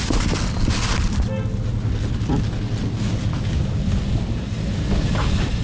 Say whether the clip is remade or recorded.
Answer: recorded